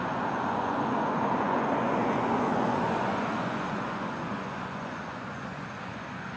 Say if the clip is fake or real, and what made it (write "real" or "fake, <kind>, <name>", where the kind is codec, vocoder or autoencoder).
fake, vocoder, Vocos